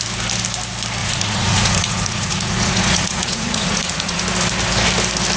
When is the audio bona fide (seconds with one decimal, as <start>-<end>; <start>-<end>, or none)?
0.0-1.0; 4.2-5.4